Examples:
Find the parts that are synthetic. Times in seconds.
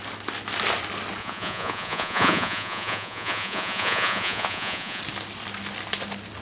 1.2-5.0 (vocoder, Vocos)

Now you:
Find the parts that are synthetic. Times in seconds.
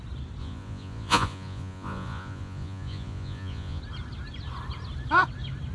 0.4-3.8 (vocoder, Vocos)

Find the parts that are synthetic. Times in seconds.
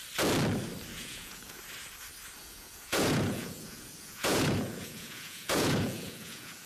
0.9-1.6 (vocoder, Vocos); 2.4-6.7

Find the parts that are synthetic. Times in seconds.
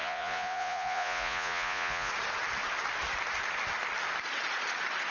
0.0-2.1 (vocoder, Vocos)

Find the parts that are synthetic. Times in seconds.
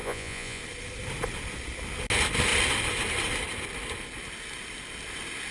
0.0-0.6 (vocoder, Vocos)